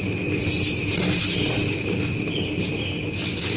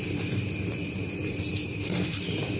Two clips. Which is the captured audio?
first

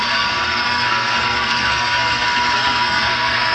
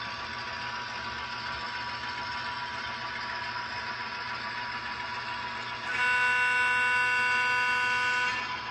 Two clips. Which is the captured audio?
second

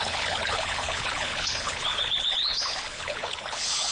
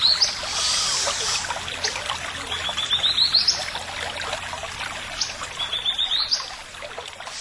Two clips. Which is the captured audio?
second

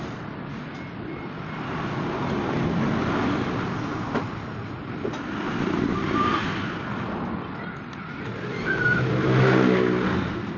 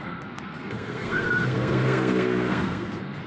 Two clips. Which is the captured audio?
first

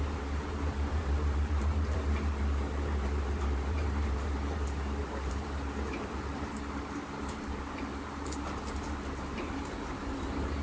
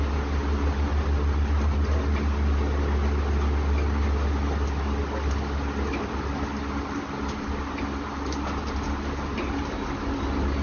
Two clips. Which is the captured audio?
second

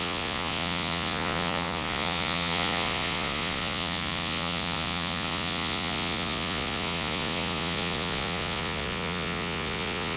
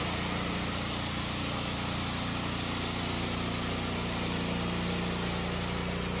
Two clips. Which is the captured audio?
second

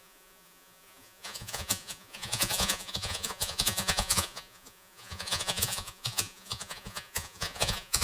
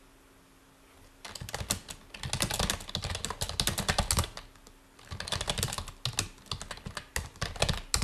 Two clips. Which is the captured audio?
second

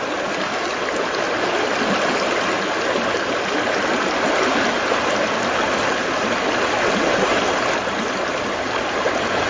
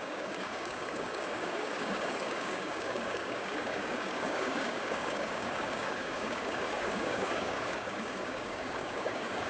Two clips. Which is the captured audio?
first